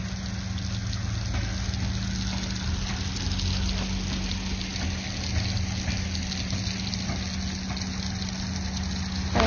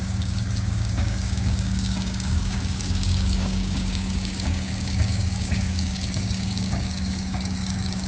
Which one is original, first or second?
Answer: first